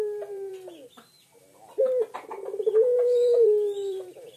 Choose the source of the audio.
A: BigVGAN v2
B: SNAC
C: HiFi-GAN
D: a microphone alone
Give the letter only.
A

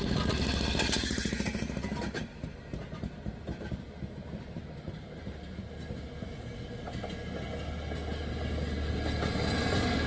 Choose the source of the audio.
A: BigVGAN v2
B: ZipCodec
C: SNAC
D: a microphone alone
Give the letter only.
D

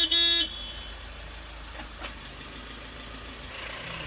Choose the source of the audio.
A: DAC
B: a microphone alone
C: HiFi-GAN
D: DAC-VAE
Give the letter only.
B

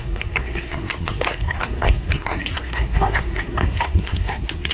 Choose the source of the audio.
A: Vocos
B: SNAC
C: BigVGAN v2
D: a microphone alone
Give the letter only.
B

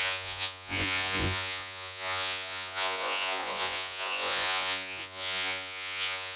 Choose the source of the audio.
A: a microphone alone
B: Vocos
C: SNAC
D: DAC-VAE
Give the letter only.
B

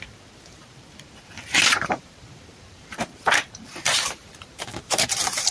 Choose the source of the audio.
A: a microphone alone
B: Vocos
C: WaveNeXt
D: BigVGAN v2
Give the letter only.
D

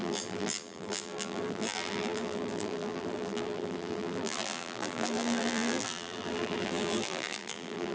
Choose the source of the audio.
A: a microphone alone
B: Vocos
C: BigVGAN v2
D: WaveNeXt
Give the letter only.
C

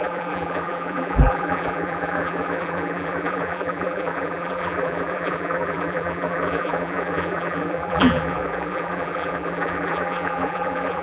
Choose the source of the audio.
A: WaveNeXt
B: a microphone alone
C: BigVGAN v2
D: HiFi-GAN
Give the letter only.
C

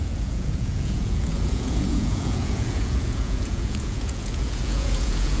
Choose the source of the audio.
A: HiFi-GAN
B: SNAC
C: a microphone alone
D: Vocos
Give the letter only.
D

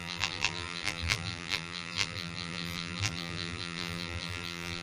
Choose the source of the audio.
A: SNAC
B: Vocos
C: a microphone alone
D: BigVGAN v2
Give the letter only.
D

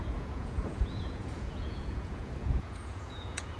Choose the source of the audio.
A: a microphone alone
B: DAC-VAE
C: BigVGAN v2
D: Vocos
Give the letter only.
D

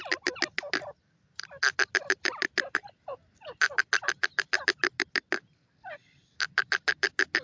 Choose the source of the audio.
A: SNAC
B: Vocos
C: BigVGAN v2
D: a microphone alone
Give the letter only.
D